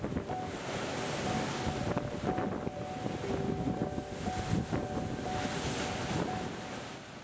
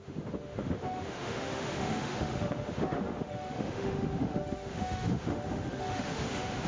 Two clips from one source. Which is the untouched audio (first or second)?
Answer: first